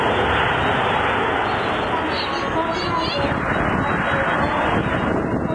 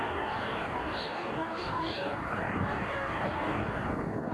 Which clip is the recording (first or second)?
first